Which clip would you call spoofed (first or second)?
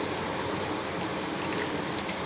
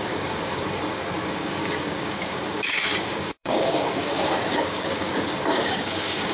second